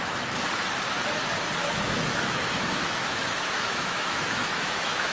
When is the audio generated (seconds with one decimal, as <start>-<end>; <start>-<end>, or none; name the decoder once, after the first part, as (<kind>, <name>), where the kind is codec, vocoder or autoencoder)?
1.6-5.1 (autoencoder, DAC-VAE)